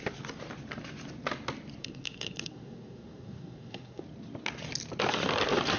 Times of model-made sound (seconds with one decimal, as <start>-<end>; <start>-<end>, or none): 1.8-4.0